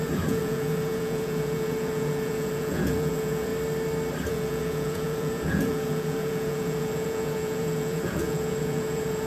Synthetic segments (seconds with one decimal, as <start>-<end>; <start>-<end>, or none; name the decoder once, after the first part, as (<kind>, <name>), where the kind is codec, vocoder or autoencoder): 0.0-3.5 (vocoder, Vocos); 4.3-9.3